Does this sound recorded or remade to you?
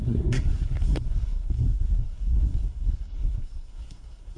remade